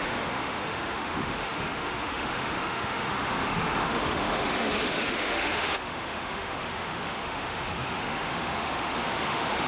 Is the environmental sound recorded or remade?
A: remade